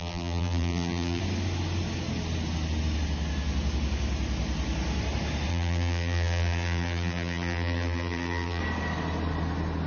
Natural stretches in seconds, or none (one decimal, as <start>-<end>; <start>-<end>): 1.2-5.5; 8.6-9.9